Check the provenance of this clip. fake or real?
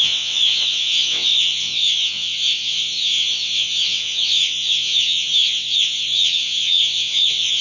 fake